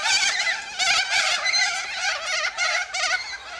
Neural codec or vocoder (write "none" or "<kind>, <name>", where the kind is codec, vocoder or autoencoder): none